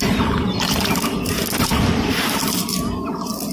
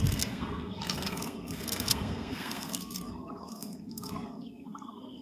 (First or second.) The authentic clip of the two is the first